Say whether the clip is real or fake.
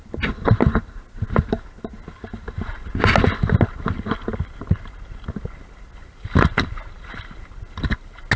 real